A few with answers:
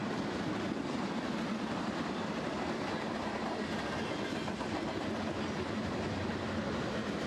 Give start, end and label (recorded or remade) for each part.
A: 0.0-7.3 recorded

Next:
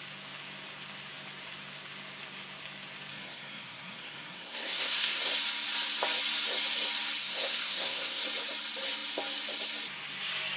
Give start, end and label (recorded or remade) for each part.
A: 0.0-3.1 recorded; 3.1-5.2 remade; 5.2-7.2 recorded; 7.2-8.2 remade; 8.2-10.6 recorded

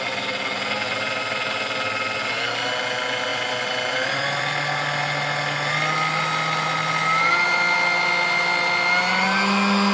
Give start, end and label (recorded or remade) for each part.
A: 0.0-3.3 recorded; 3.3-4.5 remade; 4.5-9.9 recorded

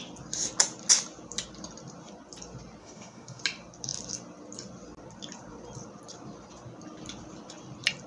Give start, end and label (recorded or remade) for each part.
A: 0.0-2.8 recorded; 2.8-3.4 remade; 3.4-8.1 recorded